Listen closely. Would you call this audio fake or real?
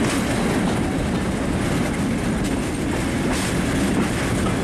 real